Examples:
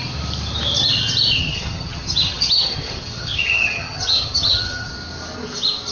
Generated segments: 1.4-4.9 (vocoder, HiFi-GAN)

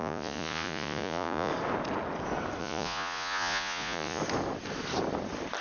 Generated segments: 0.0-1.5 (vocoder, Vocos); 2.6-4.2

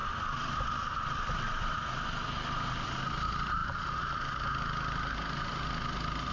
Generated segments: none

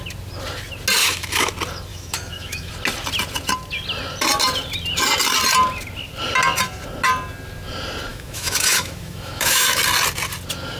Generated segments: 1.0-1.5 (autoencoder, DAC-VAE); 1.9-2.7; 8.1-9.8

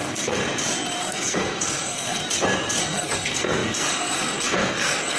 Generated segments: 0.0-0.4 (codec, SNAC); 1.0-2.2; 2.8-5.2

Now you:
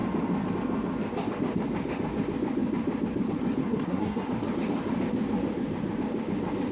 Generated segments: 3.6-4.3 (codec, SNAC)

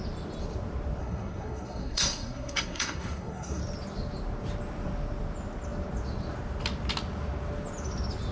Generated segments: 1.0-3.6 (codec, SNAC)